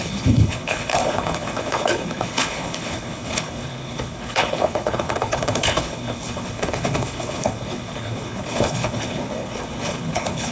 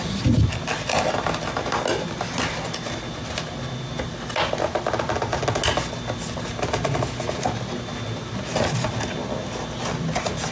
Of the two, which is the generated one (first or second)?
first